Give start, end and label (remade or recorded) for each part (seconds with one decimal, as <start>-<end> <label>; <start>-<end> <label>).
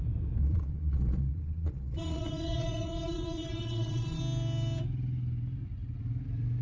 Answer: 0.0-0.4 recorded; 0.4-4.2 remade; 4.2-6.6 recorded